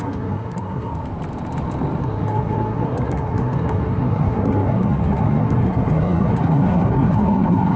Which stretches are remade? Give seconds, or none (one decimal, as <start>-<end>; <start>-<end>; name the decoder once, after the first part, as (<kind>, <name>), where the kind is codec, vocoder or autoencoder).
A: 0.0-0.9 (codec, SNAC); 2.0-7.8